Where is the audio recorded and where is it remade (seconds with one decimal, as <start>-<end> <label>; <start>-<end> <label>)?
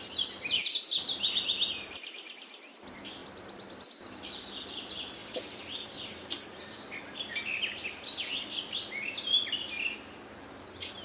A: 0.0-11.0 recorded